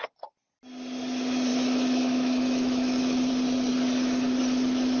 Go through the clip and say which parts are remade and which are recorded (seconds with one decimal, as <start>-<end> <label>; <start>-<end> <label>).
0.0-1.5 recorded; 1.5-3.3 remade; 3.3-5.0 recorded